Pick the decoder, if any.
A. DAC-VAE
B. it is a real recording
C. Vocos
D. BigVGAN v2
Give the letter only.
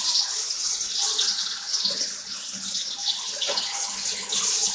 B